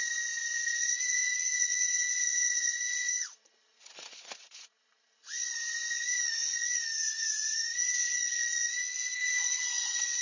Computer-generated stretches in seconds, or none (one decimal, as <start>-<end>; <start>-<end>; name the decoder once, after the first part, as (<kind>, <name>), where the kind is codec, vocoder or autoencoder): 0.0-10.2 (vocoder, Vocos)